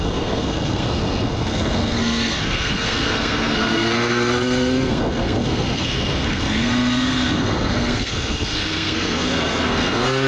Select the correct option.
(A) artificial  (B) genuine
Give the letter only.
A